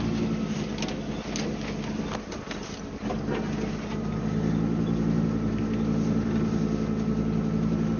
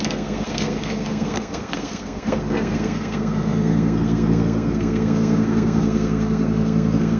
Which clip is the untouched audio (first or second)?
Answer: first